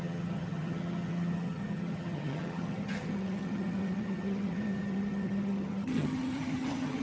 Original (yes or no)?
no